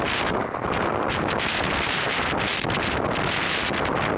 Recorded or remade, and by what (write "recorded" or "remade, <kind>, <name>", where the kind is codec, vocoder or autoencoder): recorded